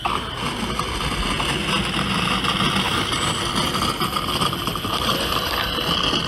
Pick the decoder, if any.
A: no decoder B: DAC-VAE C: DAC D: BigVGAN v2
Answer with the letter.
A